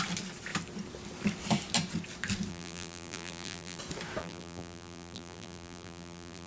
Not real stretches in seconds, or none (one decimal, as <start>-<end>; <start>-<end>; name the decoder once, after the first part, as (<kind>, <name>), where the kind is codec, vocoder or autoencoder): 2.5-3.8 (vocoder, BigVGAN v2); 4.2-6.5